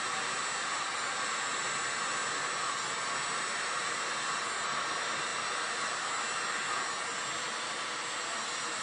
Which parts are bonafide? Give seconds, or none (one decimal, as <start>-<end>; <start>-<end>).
0.0-8.8